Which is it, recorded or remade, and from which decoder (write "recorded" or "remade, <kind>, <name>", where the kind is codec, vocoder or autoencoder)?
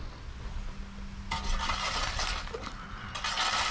recorded